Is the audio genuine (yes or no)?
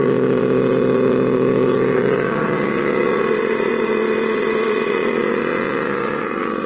no